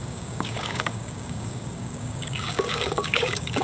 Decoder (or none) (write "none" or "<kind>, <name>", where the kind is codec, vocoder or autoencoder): codec, DAC